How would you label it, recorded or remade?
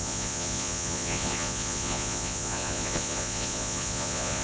remade